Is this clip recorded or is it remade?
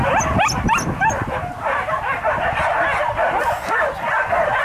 recorded